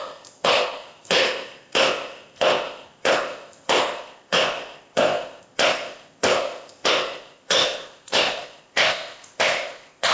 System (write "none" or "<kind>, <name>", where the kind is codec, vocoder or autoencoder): codec, ZipCodec